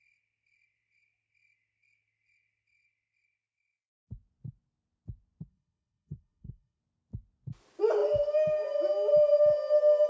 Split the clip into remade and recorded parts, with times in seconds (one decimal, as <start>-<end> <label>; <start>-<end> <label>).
0.0-5.5 recorded; 5.5-6.8 remade; 6.8-10.1 recorded